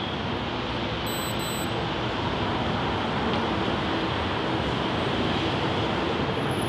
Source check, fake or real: real